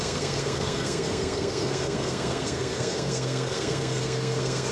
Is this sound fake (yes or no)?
yes